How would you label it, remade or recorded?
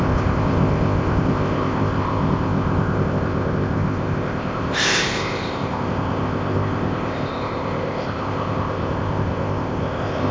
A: remade